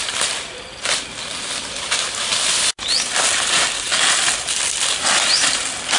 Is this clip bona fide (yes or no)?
yes